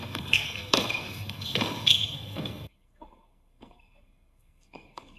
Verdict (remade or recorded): remade